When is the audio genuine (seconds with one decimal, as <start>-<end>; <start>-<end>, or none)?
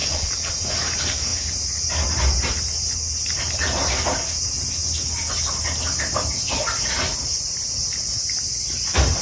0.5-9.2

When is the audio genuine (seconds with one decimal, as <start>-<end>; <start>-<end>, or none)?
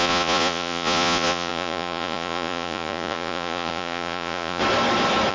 4.6-5.3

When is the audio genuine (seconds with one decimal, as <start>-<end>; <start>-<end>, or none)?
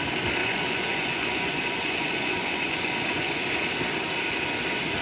0.0-0.4; 3.4-5.0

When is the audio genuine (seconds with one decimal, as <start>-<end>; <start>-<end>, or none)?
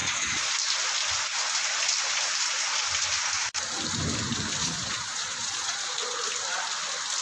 0.5-4.6; 5.9-7.2